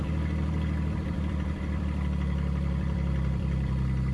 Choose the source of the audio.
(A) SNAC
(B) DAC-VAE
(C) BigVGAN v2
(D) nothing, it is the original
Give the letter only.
C